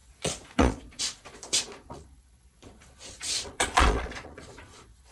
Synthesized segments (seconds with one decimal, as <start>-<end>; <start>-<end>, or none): 0.0-5.1